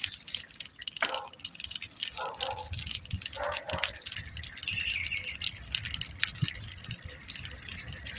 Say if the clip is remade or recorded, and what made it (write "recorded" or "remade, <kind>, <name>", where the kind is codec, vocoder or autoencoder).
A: recorded